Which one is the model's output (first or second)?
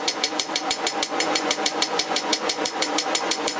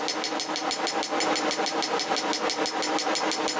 first